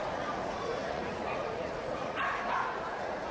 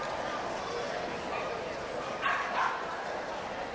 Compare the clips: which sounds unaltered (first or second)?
second